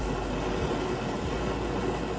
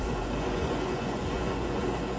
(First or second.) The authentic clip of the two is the first